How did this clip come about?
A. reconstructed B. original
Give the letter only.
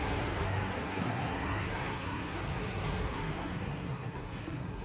A